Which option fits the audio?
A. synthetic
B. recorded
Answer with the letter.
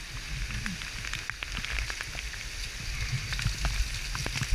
B